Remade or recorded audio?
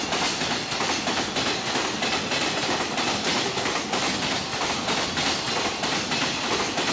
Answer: recorded